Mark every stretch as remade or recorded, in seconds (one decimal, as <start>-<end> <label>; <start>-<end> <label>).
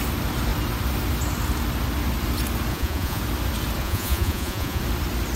0.0-2.7 recorded; 2.7-3.2 remade; 3.2-3.8 recorded; 3.8-4.8 remade; 4.8-5.4 recorded